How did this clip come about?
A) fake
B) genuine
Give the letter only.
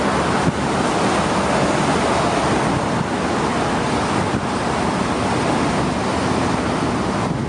B